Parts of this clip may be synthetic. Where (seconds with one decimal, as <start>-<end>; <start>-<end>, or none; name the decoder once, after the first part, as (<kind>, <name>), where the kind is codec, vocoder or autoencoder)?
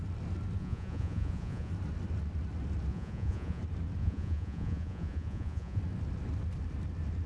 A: 0.6-1.7 (vocoder, Vocos); 2.9-3.6; 4.0-5.8